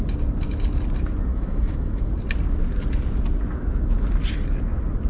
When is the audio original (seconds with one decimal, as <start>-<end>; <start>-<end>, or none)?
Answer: 0.0-1.3; 2.1-5.1